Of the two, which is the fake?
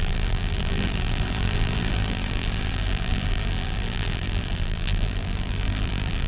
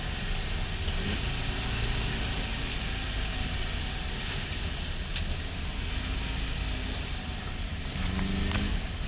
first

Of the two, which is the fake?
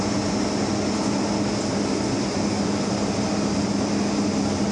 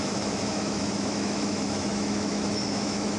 second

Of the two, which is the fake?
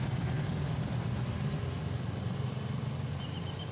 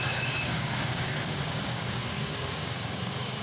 second